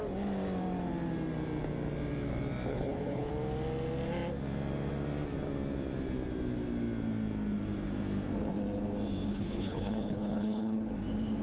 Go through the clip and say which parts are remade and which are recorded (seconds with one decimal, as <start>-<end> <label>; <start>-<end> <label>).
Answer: 0.0-2.7 recorded; 2.7-3.3 remade; 3.3-9.3 recorded; 9.3-10.9 remade; 10.9-11.4 recorded